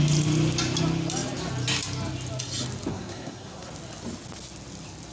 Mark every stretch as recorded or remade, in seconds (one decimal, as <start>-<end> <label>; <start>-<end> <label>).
0.0-2.9 recorded; 2.9-3.7 remade; 3.7-5.1 recorded